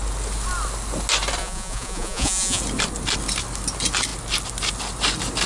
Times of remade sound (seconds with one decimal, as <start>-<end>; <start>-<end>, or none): 1.4-2.6